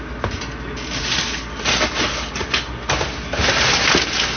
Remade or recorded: recorded